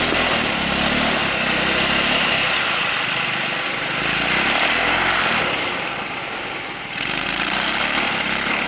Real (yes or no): yes